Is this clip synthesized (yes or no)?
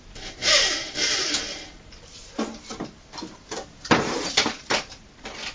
yes